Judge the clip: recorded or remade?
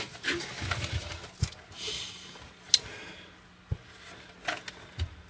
recorded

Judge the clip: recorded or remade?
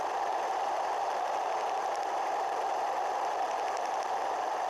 recorded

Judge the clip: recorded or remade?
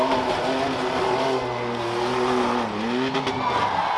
recorded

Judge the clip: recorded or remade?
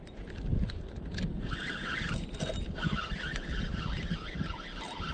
recorded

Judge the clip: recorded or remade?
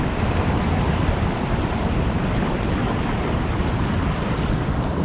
recorded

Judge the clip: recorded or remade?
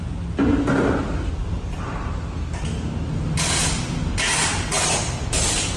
recorded